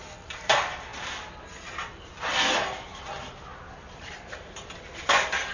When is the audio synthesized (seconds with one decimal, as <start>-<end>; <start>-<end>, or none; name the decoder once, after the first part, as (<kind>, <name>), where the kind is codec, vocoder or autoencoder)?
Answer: none